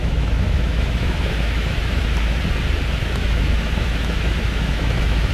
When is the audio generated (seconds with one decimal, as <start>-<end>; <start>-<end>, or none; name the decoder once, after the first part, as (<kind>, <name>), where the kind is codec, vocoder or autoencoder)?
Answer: 0.0-2.4 (autoencoder, DAC-VAE); 3.0-5.3